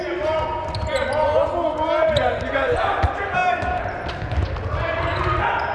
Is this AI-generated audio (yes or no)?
no